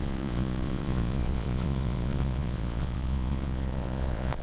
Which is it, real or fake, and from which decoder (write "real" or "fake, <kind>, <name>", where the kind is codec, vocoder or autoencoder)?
fake, vocoder, Vocos